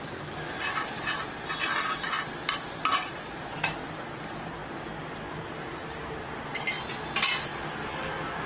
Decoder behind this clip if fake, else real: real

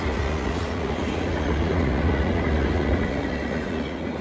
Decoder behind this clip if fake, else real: fake, vocoder, Vocos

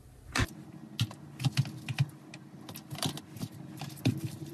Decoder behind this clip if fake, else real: real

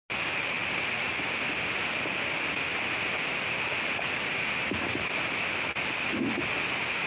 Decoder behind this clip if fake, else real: real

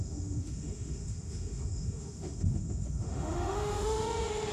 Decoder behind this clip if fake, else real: fake, autoencoder, DAC-VAE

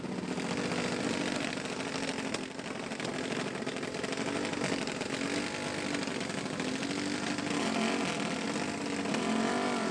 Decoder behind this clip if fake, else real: real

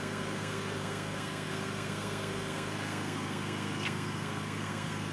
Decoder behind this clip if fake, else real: fake, codec, SNAC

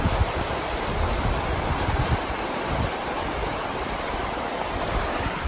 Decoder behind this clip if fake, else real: real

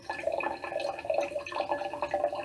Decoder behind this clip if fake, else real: real